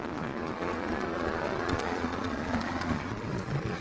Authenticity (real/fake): fake